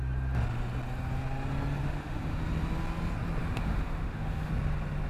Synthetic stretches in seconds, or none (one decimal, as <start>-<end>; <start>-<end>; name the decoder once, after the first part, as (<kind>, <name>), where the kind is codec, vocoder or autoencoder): 1.8-2.4 (autoencoder, DAC-VAE); 3.4-4.5